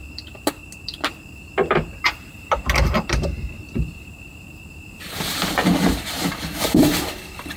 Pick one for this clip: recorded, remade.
remade